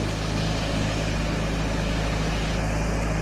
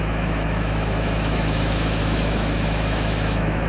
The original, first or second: first